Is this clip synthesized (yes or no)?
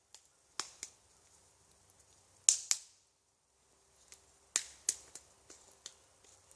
no